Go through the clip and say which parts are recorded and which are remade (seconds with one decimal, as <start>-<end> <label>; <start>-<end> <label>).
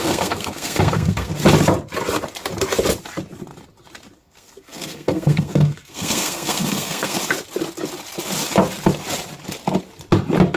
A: 0.0-1.3 remade; 1.3-4.2 recorded; 4.2-7.2 remade; 7.2-10.6 recorded